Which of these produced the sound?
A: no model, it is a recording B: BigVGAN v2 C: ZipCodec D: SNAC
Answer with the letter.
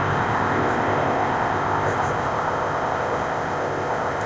C